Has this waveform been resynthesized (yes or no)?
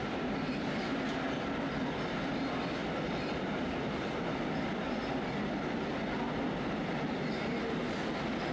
no